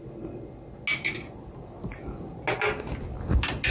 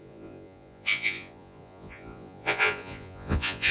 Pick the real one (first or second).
first